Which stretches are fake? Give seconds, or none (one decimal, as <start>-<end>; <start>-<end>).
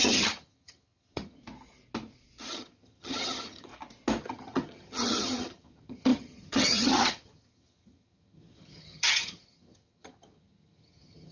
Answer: 0.0-1.4; 2.5-3.7; 4.2-11.3